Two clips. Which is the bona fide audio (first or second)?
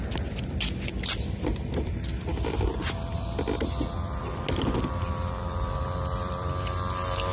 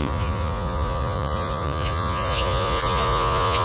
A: first